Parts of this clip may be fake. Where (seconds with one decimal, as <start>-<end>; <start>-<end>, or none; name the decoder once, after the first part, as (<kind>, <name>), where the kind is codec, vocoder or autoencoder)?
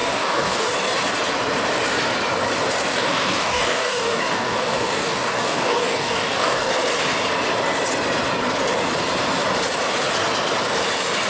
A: 0.0-0.7 (codec, DAC); 2.9-6.7